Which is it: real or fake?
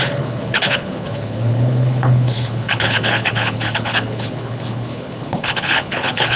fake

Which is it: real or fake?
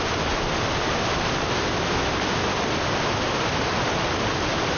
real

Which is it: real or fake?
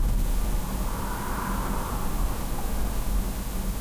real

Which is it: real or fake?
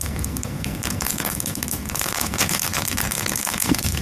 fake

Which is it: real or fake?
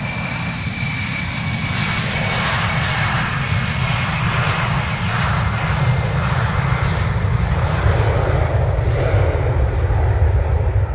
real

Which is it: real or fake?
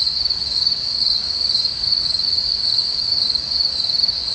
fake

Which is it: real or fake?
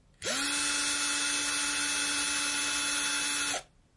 real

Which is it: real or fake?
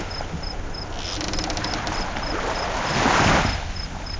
real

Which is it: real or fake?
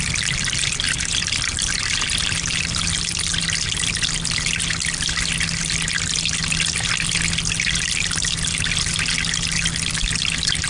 real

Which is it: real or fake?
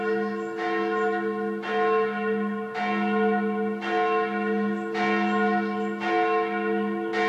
real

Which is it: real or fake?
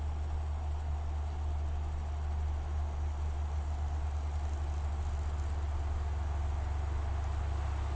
real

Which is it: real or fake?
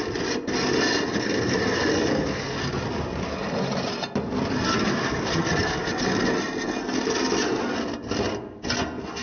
real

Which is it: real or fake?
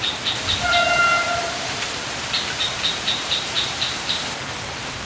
fake